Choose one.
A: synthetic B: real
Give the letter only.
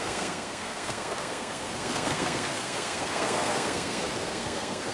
A